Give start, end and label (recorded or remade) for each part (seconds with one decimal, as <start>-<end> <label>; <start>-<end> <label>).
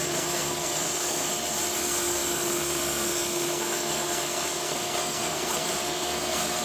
0.0-1.3 remade; 1.3-1.8 recorded; 1.8-6.6 remade